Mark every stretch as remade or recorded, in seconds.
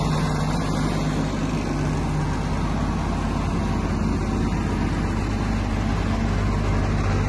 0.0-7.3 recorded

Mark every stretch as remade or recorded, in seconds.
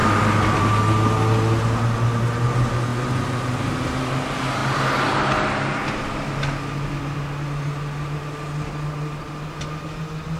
0.0-10.4 recorded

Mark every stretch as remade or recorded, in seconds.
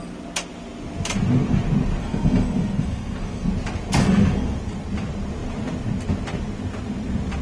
0.0-2.0 recorded; 2.0-3.5 remade; 3.5-4.0 recorded; 4.0-4.6 remade; 4.6-7.4 recorded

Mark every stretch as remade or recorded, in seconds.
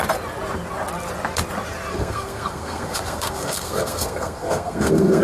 0.0-1.9 recorded; 1.9-5.2 remade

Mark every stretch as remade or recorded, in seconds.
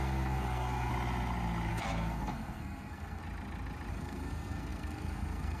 0.0-0.9 remade; 0.9-1.7 recorded; 1.7-3.2 remade; 3.2-3.9 recorded; 3.9-5.6 remade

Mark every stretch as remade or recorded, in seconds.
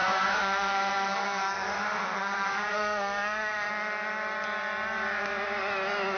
0.0-3.7 remade; 3.7-6.2 recorded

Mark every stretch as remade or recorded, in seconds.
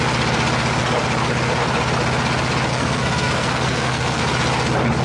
0.0-2.7 recorded; 2.7-4.2 remade; 4.2-5.0 recorded